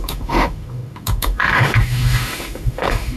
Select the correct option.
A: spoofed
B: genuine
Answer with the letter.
A